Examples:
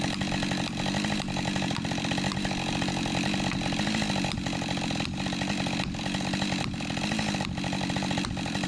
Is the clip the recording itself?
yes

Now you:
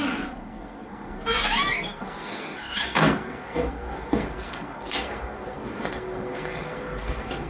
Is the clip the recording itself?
no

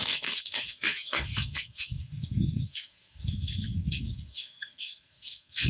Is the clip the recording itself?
no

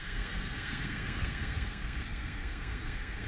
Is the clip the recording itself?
no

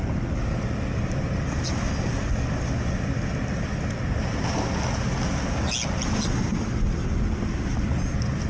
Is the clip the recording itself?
yes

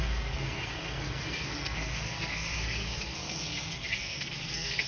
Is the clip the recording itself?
no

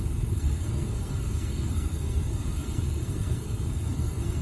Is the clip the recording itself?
no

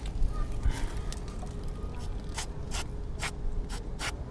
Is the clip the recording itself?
yes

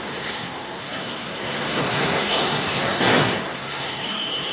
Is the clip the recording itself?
no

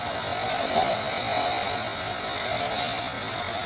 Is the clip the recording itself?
yes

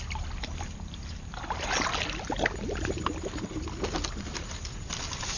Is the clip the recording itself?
yes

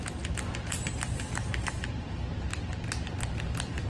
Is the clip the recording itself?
yes